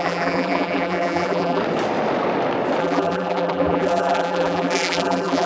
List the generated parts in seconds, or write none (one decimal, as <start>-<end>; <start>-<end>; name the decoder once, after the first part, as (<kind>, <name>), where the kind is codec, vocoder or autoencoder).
0.0-1.6 (vocoder, BigVGAN v2); 2.8-5.5